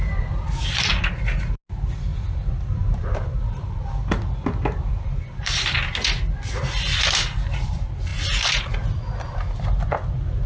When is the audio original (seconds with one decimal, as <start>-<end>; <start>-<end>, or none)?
0.0-10.5